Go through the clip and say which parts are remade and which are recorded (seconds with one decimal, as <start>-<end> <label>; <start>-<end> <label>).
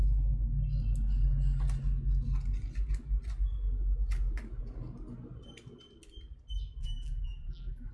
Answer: 0.0-6.8 recorded; 6.8-7.9 remade